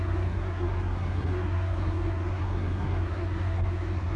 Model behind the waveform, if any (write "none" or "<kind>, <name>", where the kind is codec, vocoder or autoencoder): codec, SNAC